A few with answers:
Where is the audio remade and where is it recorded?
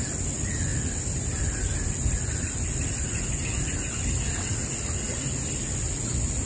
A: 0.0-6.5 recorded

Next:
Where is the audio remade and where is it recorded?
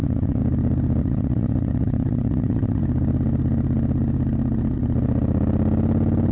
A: 0.0-0.4 remade; 0.4-1.0 recorded; 1.0-2.8 remade; 2.8-6.3 recorded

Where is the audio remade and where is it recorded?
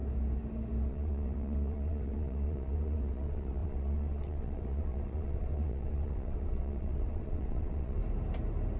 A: 0.0-0.9 recorded; 0.9-8.0 remade; 8.0-8.8 recorded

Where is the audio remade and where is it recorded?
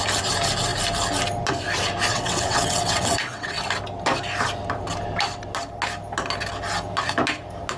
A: 0.0-2.1 recorded; 2.1-3.7 remade; 3.7-7.8 recorded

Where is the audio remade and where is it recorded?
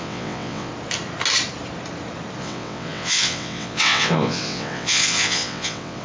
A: 0.0-0.7 remade; 0.7-2.4 recorded; 2.4-6.0 remade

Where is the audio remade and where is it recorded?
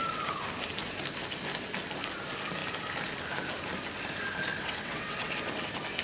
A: 0.0-4.5 recorded; 4.5-5.3 remade; 5.3-6.0 recorded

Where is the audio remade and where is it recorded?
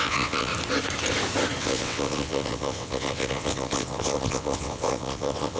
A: 0.0-0.5 remade; 0.5-1.6 recorded; 1.6-5.6 remade